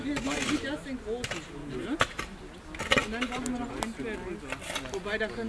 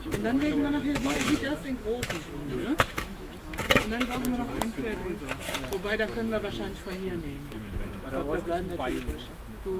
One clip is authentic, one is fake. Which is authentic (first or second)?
first